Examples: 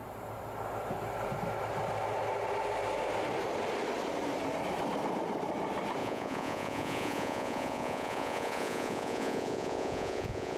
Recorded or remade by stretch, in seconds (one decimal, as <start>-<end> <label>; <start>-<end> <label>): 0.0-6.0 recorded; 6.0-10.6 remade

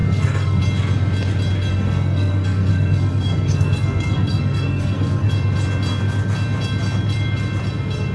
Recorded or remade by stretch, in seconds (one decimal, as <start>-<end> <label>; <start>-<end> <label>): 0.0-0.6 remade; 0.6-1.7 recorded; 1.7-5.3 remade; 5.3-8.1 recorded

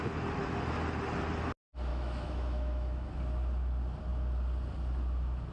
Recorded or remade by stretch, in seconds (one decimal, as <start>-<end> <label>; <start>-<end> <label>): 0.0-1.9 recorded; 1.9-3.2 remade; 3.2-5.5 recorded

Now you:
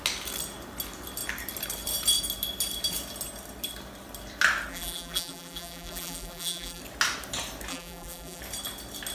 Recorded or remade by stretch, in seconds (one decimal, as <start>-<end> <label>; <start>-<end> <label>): 0.0-4.7 recorded; 4.7-6.8 remade; 6.8-7.7 recorded; 7.7-8.4 remade; 8.4-9.1 recorded